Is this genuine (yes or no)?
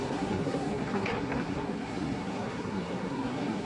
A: no